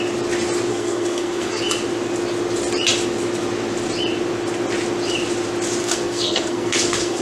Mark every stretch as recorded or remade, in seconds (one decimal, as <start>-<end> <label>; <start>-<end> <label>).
0.0-0.7 recorded; 0.7-1.6 remade; 1.6-5.8 recorded; 5.8-7.2 remade